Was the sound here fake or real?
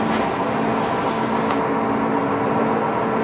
real